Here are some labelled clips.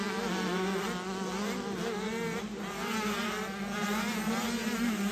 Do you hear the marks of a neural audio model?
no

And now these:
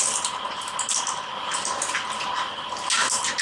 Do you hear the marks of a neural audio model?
no